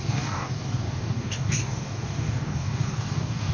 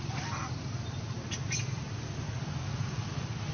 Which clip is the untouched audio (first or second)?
second